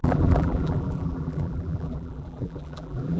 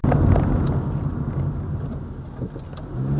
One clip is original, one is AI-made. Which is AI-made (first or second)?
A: first